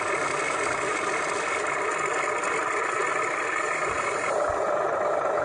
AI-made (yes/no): no